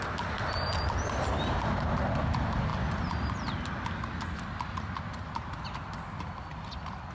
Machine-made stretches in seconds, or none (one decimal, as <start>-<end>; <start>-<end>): none